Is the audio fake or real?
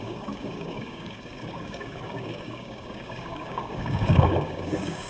fake